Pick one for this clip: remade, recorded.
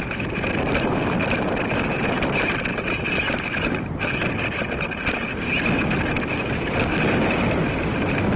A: recorded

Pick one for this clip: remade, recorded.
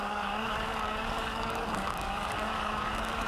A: remade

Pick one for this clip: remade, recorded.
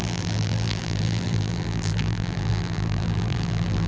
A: remade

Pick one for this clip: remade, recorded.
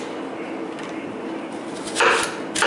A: recorded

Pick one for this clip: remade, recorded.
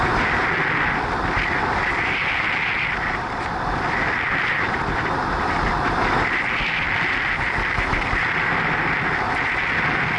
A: recorded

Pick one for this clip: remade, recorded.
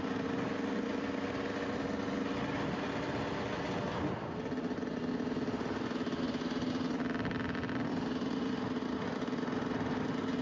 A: recorded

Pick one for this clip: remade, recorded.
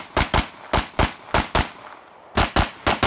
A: recorded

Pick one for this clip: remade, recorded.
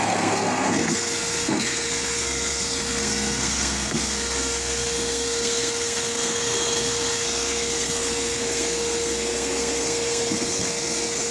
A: remade